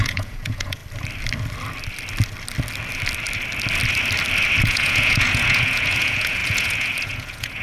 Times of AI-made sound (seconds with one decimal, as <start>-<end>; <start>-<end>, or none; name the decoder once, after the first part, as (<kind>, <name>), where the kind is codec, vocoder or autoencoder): 0.0-0.8 (vocoder, Vocos); 4.6-7.6